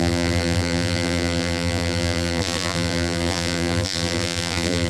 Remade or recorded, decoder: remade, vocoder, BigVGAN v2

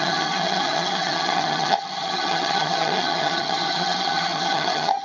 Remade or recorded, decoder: remade, vocoder, HiFi-GAN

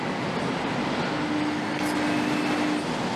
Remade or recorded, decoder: recorded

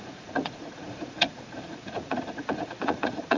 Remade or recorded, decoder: remade, vocoder, Vocos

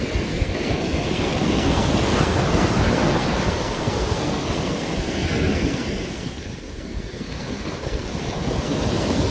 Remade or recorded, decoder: remade, codec, SNAC